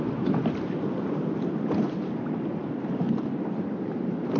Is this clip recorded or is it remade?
recorded